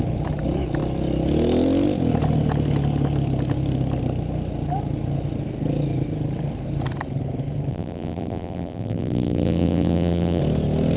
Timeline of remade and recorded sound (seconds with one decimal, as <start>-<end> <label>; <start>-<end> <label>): 0.0-7.7 recorded; 7.7-10.4 remade; 10.4-11.0 recorded